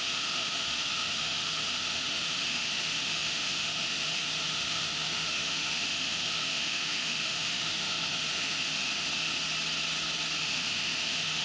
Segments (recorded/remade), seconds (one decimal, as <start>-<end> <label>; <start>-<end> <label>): 0.0-9.4 remade; 9.4-10.4 recorded; 10.4-11.4 remade